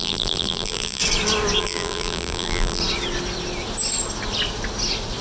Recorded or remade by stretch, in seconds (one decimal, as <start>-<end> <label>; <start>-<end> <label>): 0.0-1.0 remade; 1.0-1.6 recorded; 1.6-2.8 remade; 2.8-5.2 recorded